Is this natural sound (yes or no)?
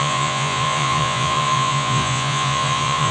no